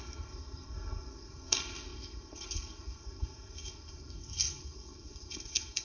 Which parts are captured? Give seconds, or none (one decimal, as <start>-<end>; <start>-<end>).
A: none